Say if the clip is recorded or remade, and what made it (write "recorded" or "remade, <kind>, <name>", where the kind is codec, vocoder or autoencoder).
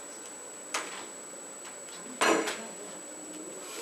recorded